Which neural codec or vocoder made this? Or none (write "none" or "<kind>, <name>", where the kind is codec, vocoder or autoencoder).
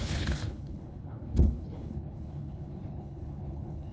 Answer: codec, HILCodec